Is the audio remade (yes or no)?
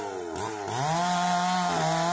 no